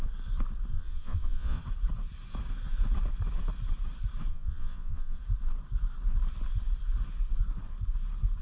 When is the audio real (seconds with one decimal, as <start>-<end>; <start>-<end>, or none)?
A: 0.0-0.7; 1.6-4.3; 5.2-8.4